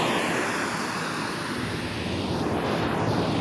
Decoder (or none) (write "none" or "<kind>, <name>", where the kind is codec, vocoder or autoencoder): none